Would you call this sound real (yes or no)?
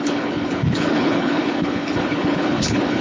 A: no